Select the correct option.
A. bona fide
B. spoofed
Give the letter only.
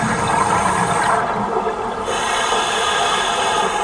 A